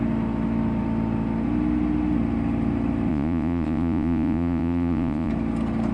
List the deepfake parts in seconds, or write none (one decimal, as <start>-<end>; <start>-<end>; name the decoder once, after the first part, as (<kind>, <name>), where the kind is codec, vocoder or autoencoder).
3.1-5.3 (vocoder, Vocos)